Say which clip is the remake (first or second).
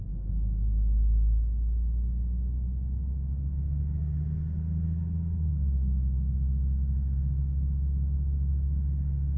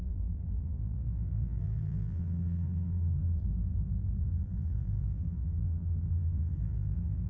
second